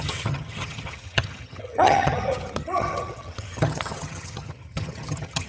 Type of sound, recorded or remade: remade